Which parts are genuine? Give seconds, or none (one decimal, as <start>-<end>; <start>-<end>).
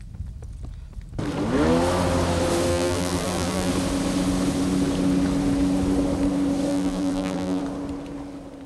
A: 0.0-2.7; 3.7-6.7; 7.6-8.7